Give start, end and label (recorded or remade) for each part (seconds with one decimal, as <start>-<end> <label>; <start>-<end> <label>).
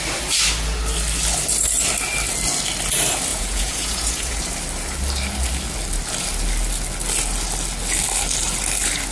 0.0-3.3 recorded; 3.3-4.4 remade; 4.4-9.1 recorded